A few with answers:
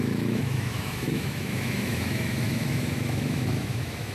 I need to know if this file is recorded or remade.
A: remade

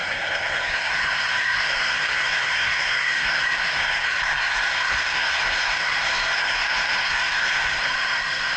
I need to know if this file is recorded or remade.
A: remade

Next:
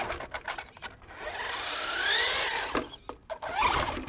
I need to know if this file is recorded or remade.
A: recorded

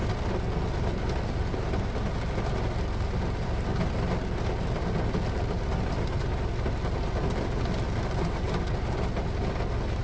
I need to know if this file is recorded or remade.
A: recorded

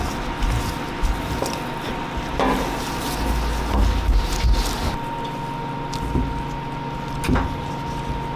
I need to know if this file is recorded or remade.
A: recorded